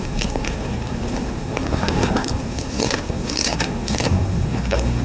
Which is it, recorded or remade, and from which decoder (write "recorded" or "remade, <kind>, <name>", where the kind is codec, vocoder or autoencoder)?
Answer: remade, codec, SNAC